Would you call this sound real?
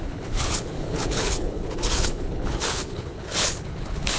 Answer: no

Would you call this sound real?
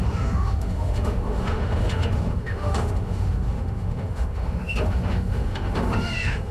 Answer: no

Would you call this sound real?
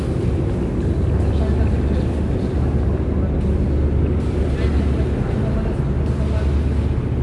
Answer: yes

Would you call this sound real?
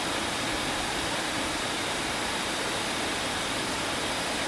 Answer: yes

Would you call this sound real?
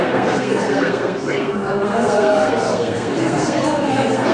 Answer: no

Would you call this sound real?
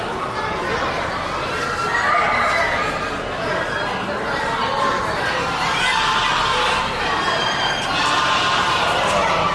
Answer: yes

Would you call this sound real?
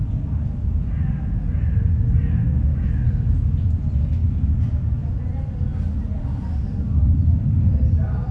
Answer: yes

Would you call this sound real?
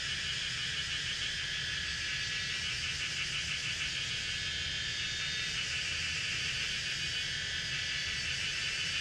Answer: yes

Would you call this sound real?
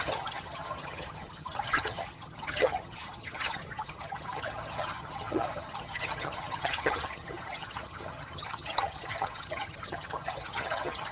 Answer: no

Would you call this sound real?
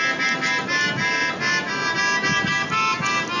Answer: yes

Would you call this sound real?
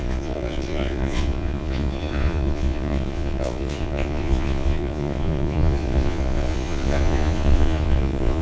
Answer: no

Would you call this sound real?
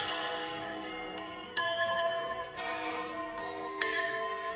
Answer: no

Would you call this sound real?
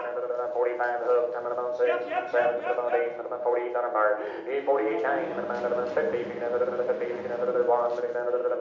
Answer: yes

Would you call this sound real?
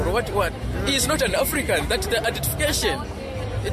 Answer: yes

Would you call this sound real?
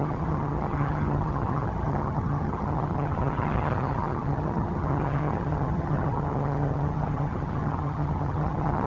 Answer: no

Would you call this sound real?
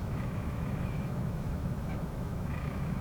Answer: no